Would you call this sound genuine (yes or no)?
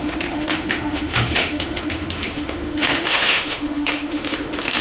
no